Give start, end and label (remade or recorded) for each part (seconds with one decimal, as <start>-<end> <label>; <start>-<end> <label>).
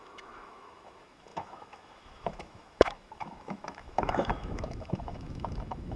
0.0-6.0 remade